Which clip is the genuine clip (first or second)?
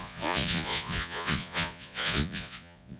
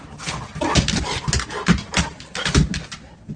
second